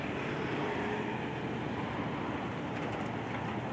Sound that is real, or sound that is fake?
real